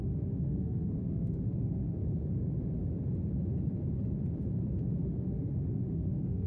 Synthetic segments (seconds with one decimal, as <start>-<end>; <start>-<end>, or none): 0.0-2.0; 4.9-6.5